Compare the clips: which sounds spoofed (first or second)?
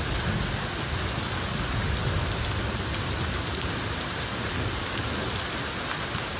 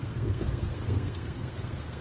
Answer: second